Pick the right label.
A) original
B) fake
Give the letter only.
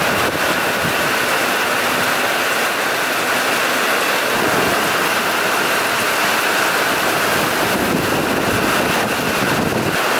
A